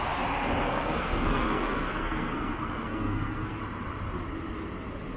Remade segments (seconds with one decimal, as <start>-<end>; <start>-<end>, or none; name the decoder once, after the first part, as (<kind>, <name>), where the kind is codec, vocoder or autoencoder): 0.6-3.6 (codec, SNAC)

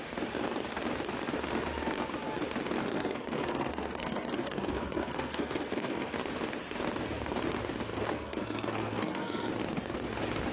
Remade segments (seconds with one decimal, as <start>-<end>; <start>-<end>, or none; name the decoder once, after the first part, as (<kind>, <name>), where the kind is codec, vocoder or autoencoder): 2.9-6.2 (codec, SNAC); 7.9-9.5

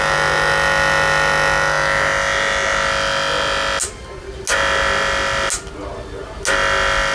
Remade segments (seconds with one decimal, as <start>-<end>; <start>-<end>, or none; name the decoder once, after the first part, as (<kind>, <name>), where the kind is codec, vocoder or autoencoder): none

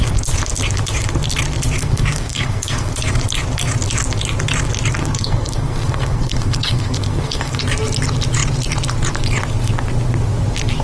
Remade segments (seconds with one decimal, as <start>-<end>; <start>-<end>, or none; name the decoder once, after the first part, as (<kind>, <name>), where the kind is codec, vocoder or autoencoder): 1.8-2.9 (codec, SNAC); 5.0-7.6

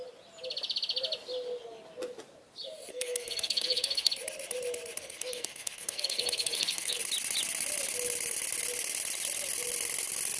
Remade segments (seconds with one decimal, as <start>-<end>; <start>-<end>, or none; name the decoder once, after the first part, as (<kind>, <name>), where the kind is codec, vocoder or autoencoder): 2.9-4.1 (codec, SNAC); 5.0-7.0

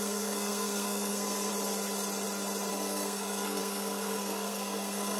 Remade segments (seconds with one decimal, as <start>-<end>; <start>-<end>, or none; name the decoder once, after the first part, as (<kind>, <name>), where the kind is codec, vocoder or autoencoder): 0.0-1.5 (codec, SNAC); 2.7-5.2